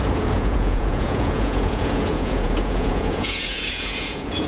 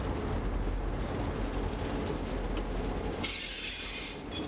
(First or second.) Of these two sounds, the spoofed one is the first